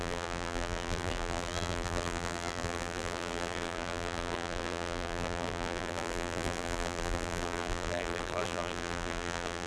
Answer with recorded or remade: remade